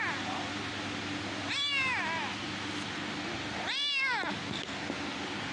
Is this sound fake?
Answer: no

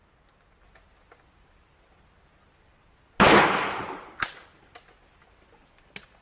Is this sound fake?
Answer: no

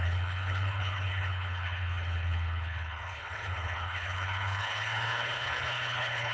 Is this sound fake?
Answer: yes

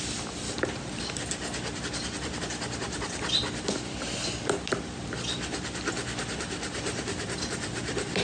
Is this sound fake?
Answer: no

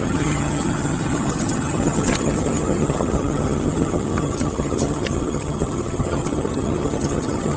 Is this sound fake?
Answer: yes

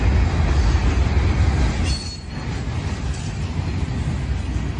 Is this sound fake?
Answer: no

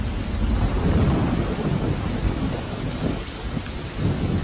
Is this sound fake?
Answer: no